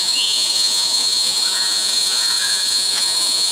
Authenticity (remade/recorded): remade